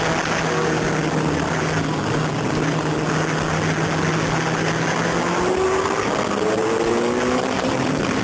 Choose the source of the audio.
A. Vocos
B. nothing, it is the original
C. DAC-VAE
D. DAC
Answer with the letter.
B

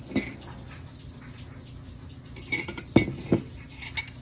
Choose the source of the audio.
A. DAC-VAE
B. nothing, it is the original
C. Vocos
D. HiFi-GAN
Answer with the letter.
B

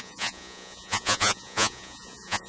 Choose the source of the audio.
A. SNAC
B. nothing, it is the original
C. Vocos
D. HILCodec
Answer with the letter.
C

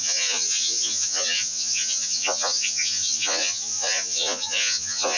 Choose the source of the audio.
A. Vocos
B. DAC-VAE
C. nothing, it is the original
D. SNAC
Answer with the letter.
A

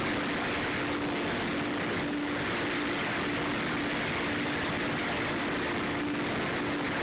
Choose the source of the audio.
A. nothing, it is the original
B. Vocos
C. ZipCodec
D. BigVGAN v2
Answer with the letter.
A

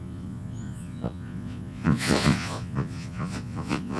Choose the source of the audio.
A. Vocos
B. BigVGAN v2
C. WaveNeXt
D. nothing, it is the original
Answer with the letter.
A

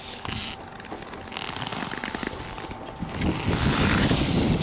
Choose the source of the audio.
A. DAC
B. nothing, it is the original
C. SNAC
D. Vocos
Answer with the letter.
B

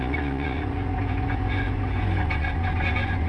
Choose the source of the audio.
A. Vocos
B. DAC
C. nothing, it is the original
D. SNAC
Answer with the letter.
A